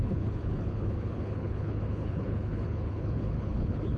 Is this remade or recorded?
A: remade